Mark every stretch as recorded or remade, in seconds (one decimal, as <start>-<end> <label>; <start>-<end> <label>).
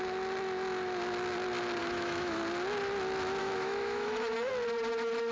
0.0-1.8 recorded; 1.8-2.4 remade; 2.4-3.4 recorded; 3.4-4.5 remade; 4.5-5.3 recorded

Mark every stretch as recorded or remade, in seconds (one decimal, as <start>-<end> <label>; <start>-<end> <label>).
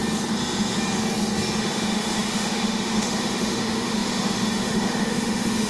0.0-1.6 recorded; 1.6-5.7 remade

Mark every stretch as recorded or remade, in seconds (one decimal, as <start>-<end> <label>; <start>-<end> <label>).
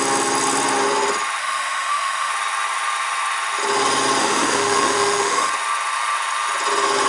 0.0-1.4 recorded; 1.4-2.3 remade; 2.3-4.2 recorded; 4.2-5.5 remade; 5.5-7.1 recorded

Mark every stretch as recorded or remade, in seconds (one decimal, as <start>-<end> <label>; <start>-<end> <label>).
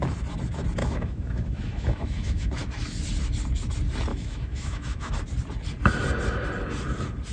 0.0-0.8 recorded; 0.8-2.5 remade; 2.5-4.1 recorded; 4.1-5.1 remade; 5.1-7.3 recorded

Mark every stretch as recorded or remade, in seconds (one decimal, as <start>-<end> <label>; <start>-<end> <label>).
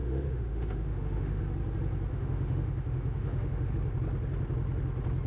0.0-1.4 remade; 1.4-2.1 recorded; 2.1-3.7 remade; 3.7-5.3 recorded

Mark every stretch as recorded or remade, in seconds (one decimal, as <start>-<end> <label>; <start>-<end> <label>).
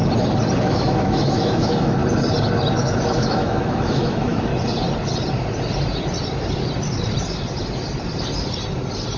0.0-0.6 recorded; 0.6-2.0 remade; 2.0-2.7 recorded; 2.7-4.5 remade; 4.5-9.2 recorded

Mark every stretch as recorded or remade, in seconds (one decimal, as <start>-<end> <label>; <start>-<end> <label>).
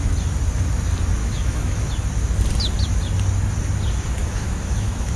0.0-1.2 recorded; 1.2-1.9 remade; 1.9-4.2 recorded; 4.2-5.2 remade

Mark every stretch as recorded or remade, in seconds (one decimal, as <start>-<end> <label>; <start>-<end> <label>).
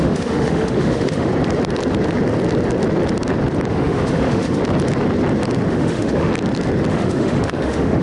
0.0-1.3 remade; 1.3-3.7 recorded; 3.7-4.6 remade; 4.6-5.7 recorded; 5.7-6.3 remade; 6.3-6.9 recorded; 6.9-8.0 remade